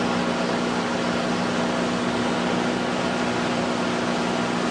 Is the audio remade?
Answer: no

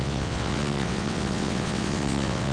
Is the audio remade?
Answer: yes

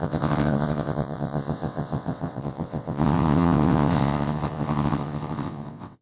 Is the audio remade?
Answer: yes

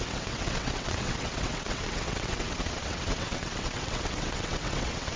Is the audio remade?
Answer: yes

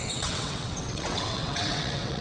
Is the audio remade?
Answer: yes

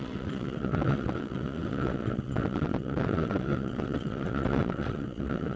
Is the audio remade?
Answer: yes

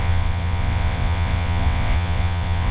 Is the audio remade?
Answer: yes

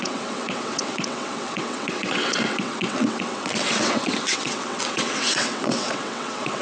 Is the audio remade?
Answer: yes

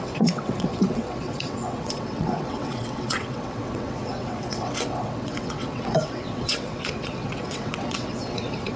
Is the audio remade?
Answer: yes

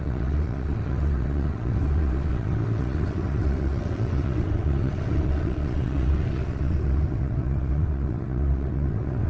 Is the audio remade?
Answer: yes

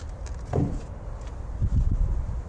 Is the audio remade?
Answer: no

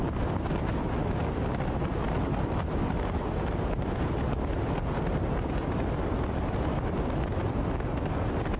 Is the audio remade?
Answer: no